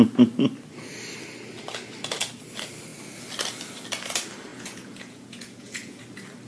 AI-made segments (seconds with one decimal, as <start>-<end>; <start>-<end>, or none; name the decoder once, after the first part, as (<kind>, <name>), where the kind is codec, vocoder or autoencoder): 4.5-6.0 (vocoder, Vocos)